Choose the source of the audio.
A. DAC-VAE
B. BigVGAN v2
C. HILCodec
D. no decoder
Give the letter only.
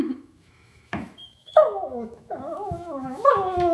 A